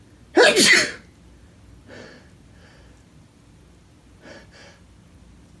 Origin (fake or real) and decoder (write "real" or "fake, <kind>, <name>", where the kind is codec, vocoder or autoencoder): real